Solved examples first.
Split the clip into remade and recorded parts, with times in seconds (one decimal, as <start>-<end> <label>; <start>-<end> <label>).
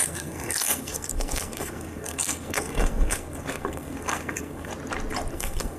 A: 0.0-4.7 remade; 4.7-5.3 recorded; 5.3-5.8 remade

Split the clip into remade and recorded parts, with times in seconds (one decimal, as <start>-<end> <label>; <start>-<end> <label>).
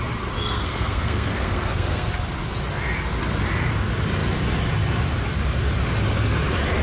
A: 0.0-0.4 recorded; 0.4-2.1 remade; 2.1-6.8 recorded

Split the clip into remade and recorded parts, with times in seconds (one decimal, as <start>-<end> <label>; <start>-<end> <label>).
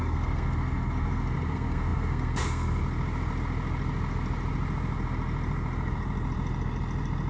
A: 0.0-2.8 remade; 2.8-7.3 recorded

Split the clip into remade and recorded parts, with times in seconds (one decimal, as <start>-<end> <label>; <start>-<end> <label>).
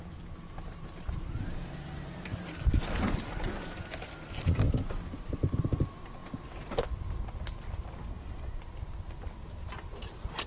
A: 0.0-8.1 recorded; 8.1-8.6 remade; 8.6-10.5 recorded